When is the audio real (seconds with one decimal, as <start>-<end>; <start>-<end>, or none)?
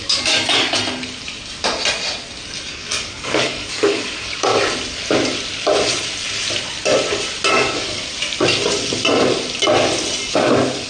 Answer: 0.8-2.7; 4.5-7.5; 8.0-10.3